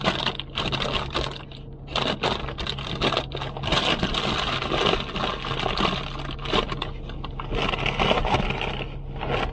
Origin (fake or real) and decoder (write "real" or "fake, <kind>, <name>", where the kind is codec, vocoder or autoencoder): real